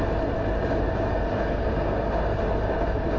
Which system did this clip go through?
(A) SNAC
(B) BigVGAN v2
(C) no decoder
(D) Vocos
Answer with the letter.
C